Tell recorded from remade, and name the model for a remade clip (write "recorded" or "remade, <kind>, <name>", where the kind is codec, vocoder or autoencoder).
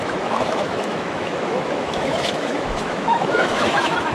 remade, autoencoder, DAC-VAE